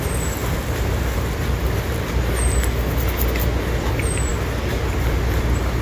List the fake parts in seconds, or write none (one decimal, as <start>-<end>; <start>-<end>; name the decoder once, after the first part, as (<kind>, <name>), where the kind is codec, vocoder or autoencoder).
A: none